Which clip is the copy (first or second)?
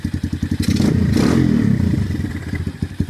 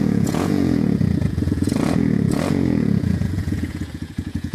second